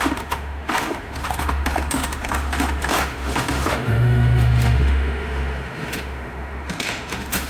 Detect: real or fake fake